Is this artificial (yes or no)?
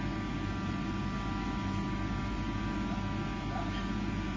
no